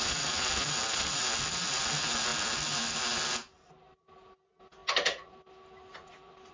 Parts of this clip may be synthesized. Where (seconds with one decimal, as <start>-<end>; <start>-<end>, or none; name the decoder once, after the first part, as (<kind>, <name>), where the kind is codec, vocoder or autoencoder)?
none